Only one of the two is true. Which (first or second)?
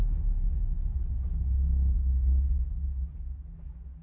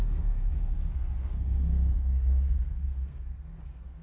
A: first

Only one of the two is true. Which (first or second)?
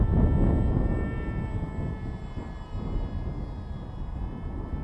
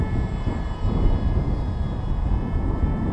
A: first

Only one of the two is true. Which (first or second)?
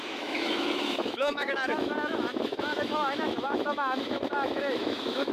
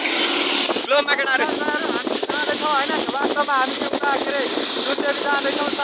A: second